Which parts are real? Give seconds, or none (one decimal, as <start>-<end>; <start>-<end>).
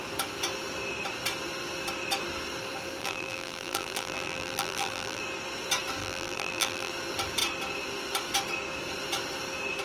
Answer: 0.0-3.0; 5.2-6.0; 6.9-9.8